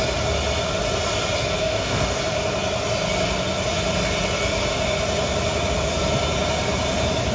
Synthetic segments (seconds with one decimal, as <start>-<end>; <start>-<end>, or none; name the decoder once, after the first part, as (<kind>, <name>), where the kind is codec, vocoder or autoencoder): 1.6-2.2 (codec, DAC)